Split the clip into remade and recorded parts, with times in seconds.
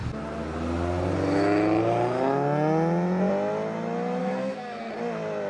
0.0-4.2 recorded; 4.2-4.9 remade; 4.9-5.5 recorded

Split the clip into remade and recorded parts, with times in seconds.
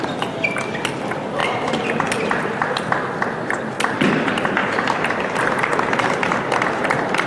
0.0-4.6 recorded; 4.6-5.4 remade; 5.4-7.3 recorded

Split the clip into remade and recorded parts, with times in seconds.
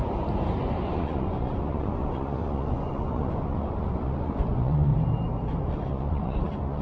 0.0-0.9 recorded; 0.9-4.9 remade; 4.9-5.6 recorded; 5.6-6.8 remade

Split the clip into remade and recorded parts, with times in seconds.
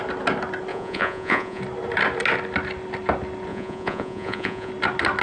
0.0-0.7 recorded; 0.7-1.6 remade; 1.6-3.5 recorded; 3.5-4.7 remade; 4.7-5.2 recorded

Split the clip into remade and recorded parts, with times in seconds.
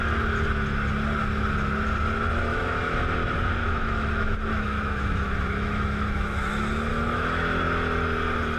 0.0-2.5 recorded; 2.5-3.0 remade; 3.0-3.6 recorded; 3.6-6.5 remade; 6.5-6.9 recorded; 6.9-7.6 remade; 7.6-8.6 recorded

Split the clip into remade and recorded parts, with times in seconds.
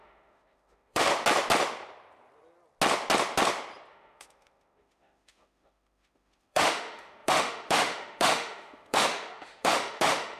0.0-1.1 remade; 1.1-3.9 recorded; 3.9-10.4 remade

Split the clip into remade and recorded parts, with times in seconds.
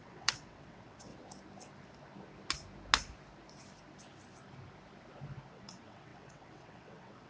0.0-1.1 remade; 1.1-5.5 recorded; 5.5-7.3 remade